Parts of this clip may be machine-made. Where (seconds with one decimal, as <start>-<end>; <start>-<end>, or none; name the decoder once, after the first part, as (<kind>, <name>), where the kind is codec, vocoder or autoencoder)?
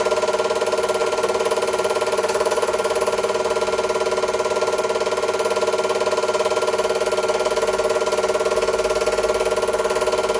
1.0-3.4 (vocoder, BigVGAN v2)